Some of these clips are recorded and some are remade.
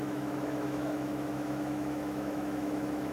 remade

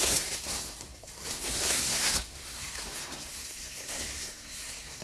remade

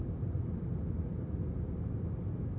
recorded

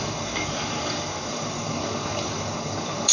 remade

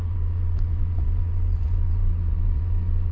remade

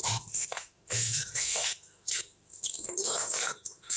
remade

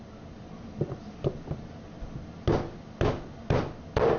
recorded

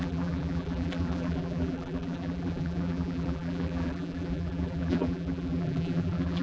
remade